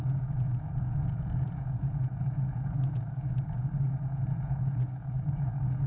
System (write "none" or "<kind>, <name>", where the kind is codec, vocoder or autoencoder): vocoder, Vocos